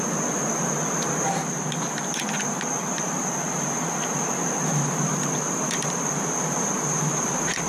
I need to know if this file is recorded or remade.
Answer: recorded